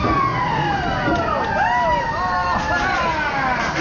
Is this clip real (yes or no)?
yes